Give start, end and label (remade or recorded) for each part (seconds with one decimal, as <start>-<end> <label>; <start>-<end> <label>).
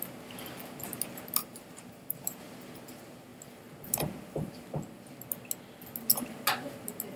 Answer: 0.0-1.4 recorded; 1.4-2.4 remade; 2.4-7.2 recorded